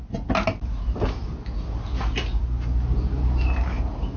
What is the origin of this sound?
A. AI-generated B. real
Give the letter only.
B